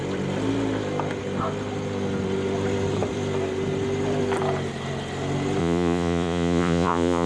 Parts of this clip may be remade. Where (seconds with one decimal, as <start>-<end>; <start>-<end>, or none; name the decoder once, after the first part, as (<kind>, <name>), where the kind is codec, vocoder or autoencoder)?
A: 5.6-7.3 (vocoder, Vocos)